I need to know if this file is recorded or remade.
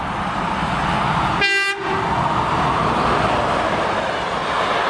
recorded